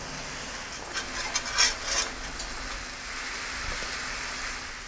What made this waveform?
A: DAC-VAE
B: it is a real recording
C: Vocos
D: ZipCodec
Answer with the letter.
B